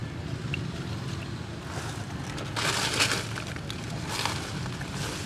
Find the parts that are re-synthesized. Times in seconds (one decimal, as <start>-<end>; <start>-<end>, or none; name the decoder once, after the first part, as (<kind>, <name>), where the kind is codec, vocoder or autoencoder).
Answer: none